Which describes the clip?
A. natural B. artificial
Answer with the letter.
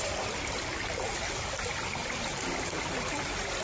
A